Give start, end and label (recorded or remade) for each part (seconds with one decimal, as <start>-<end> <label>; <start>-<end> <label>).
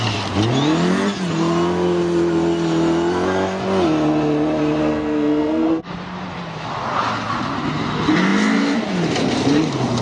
0.0-4.8 recorded; 4.8-5.9 remade; 5.9-10.0 recorded